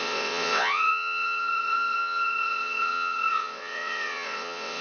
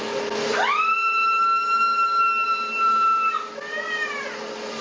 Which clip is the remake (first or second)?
first